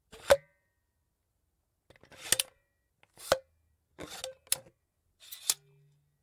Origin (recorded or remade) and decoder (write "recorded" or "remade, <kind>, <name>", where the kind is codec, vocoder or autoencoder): recorded